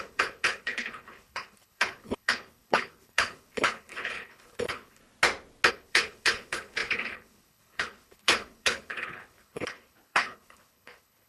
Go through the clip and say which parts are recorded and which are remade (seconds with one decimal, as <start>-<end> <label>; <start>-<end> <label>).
0.0-5.0 remade; 5.0-5.7 recorded; 5.7-11.3 remade